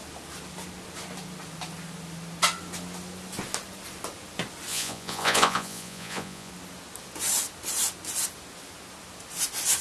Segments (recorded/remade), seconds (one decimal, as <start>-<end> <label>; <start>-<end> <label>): 0.0-4.7 recorded; 4.7-6.5 remade; 6.5-9.8 recorded

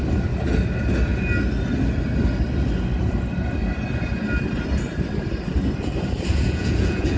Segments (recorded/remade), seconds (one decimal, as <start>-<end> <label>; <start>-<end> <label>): 0.0-6.3 recorded; 6.3-7.2 remade

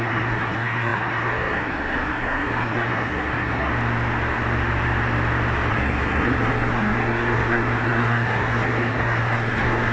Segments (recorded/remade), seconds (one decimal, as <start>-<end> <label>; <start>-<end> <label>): 0.0-3.7 remade; 3.7-5.7 recorded; 5.7-9.9 remade

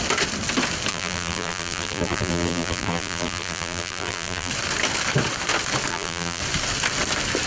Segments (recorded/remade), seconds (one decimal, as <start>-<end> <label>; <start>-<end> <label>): 0.0-0.9 recorded; 0.9-4.5 remade; 4.5-5.9 recorded; 5.9-6.4 remade; 6.4-7.5 recorded